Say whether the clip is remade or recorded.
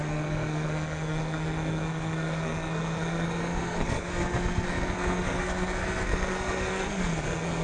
remade